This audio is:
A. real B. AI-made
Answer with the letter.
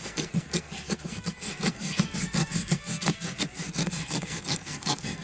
B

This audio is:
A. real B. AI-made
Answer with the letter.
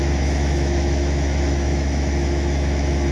B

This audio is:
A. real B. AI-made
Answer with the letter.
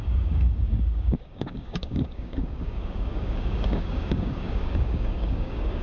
B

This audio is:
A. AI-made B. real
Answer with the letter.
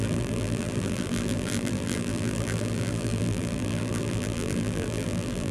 A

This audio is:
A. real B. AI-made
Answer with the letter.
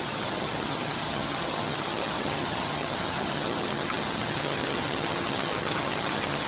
B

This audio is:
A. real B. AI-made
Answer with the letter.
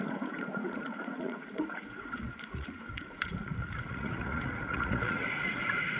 B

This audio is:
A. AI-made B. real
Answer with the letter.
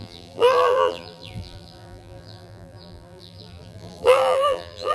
A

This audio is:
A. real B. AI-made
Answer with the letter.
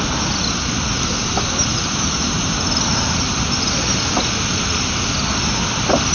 A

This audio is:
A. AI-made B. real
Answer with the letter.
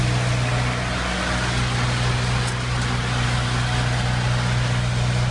B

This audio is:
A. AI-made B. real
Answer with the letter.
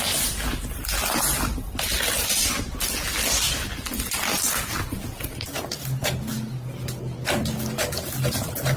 B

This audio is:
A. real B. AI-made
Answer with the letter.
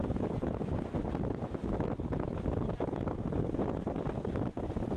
A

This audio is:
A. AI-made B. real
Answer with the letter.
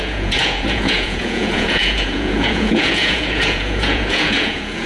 A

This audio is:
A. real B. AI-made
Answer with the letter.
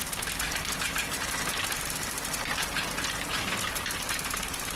B